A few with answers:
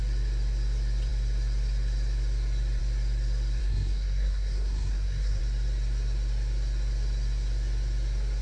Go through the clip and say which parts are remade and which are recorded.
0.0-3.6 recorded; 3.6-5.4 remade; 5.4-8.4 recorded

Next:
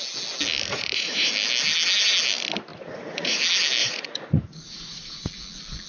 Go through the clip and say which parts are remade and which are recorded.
0.0-0.7 recorded; 0.7-1.3 remade; 1.3-2.7 recorded; 2.7-3.4 remade; 3.4-3.8 recorded; 3.8-5.3 remade; 5.3-5.9 recorded